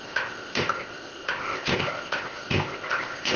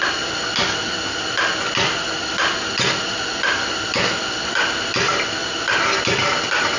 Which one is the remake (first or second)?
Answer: first